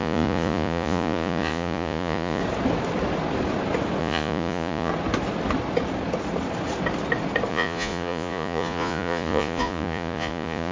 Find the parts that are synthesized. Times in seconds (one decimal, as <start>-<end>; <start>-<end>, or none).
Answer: 0.0-2.4; 4.0-4.9; 7.5-10.7